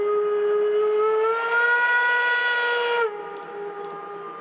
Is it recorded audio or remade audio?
recorded